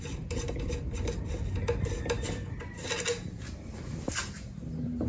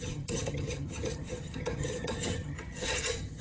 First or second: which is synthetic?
second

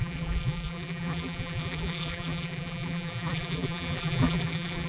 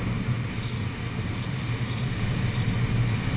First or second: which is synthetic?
first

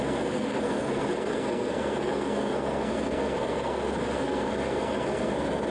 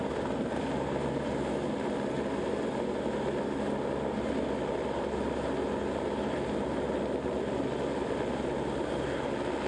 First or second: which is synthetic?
first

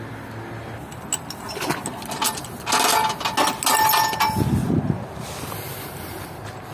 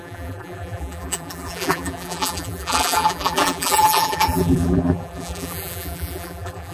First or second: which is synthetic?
second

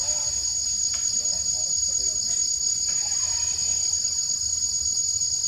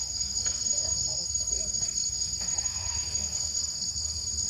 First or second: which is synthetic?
second